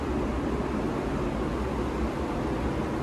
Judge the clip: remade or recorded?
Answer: recorded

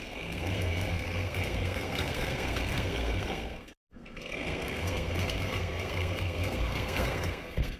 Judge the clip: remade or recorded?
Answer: remade